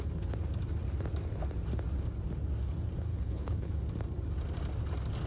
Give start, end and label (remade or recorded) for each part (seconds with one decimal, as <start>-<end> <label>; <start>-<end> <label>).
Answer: 0.0-3.1 recorded; 3.1-3.7 remade; 3.7-5.3 recorded